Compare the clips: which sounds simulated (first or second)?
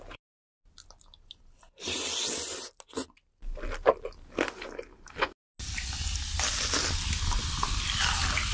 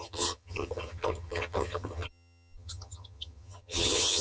second